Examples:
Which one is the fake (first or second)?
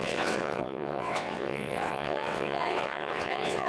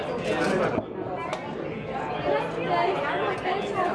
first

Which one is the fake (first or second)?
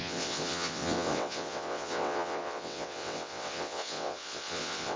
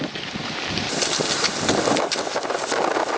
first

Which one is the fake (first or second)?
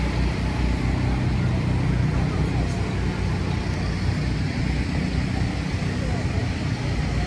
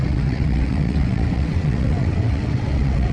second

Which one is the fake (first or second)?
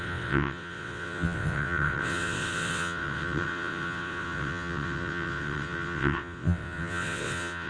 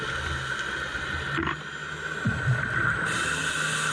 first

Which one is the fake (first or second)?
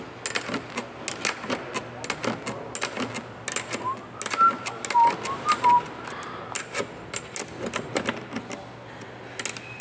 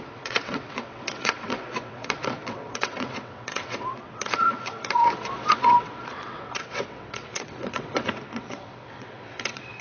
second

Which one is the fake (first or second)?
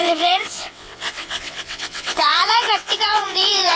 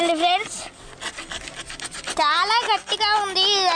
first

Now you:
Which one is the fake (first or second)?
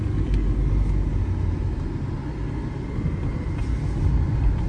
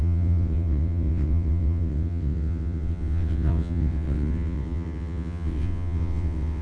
second